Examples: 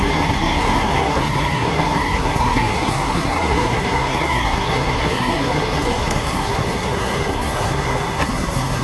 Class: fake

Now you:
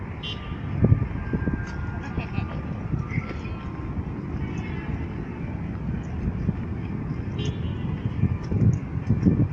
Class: real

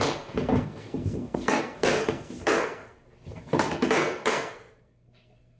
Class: fake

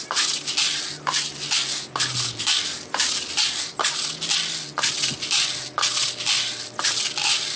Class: real